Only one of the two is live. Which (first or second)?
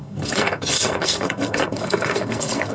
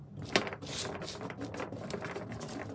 second